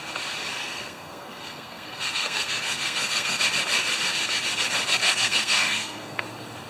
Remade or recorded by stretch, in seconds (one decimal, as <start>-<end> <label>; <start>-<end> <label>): 0.0-0.6 recorded; 0.6-3.4 remade; 3.4-5.0 recorded; 5.0-6.2 remade; 6.2-6.7 recorded